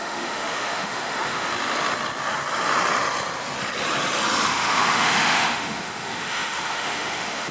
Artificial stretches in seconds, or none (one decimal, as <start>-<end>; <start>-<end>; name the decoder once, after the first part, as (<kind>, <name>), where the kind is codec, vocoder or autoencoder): 0.0-1.5 (autoencoder, DAC-VAE); 4.5-7.5